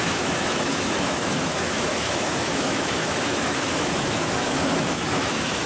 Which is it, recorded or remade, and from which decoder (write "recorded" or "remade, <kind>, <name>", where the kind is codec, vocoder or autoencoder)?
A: remade, autoencoder, DAC-VAE